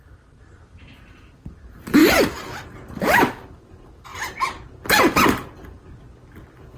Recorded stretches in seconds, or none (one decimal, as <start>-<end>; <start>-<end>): 0.0-2.0; 2.6-4.1; 4.7-6.8